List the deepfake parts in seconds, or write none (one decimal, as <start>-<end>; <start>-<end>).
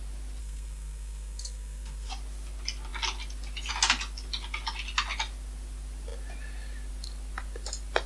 0.4-2.1